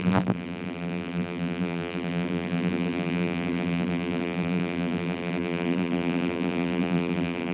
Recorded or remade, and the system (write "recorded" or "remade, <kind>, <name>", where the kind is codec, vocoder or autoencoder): remade, vocoder, BigVGAN v2